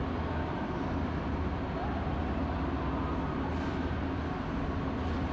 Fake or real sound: real